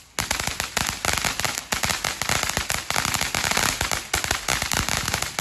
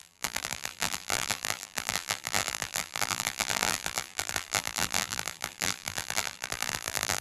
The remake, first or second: second